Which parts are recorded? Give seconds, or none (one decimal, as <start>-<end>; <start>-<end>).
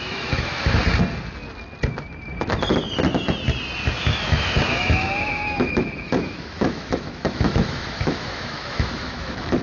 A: 0.8-4.0